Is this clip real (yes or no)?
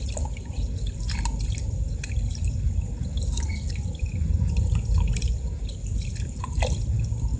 yes